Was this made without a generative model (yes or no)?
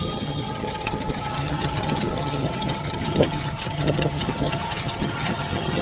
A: no